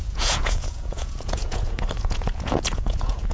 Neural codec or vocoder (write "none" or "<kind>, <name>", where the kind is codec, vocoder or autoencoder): vocoder, Vocos